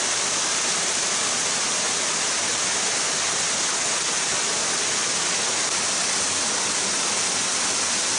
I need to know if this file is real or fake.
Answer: real